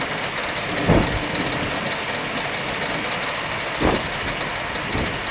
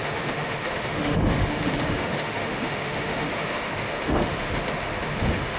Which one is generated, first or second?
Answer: second